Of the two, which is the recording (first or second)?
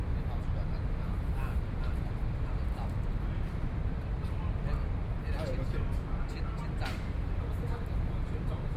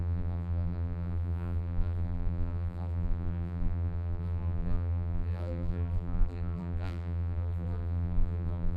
first